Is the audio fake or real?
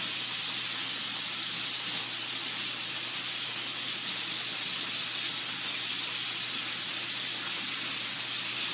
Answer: real